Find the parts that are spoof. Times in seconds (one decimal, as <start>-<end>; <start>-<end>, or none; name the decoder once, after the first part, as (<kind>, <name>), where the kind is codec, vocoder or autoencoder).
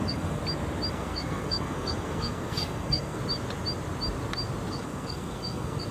0.0-0.4 (codec, SNAC); 0.9-3.2; 4.7-5.9